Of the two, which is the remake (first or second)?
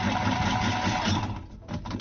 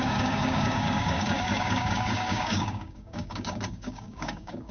second